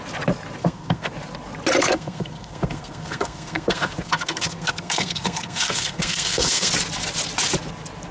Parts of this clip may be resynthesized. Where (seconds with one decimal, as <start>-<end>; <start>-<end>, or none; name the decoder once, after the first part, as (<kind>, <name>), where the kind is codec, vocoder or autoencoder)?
0.6-1.1 (codec, SNAC); 1.8-6.7